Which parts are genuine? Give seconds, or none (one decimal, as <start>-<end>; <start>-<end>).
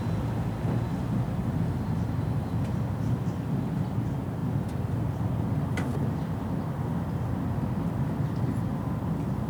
0.0-9.5